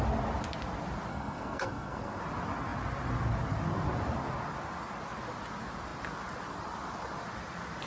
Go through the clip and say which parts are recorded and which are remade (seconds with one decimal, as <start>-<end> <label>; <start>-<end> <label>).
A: 0.0-1.1 recorded; 1.1-2.2 remade; 2.2-7.9 recorded